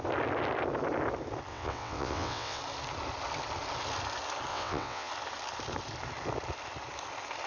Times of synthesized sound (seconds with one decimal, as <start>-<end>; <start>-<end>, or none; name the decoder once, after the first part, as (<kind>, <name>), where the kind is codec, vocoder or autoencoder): 1.5-2.6 (vocoder, WaveNeXt); 4.5-5.1